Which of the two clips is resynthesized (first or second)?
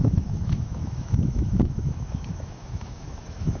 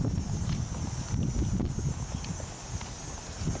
first